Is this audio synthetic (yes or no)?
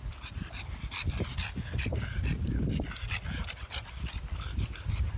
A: no